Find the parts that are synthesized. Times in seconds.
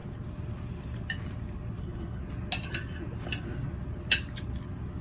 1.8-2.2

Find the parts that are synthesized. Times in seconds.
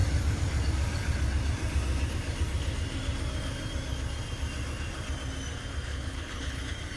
5.9-6.6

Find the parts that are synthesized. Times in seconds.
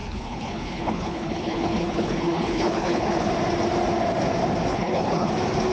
0.0-3.3; 4.7-5.3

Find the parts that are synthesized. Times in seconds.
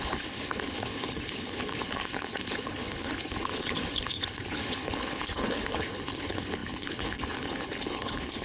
0.0-8.4